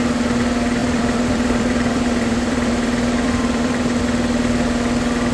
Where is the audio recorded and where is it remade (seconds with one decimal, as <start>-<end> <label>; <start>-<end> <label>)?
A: 0.0-0.8 recorded; 0.8-4.0 remade; 4.0-5.3 recorded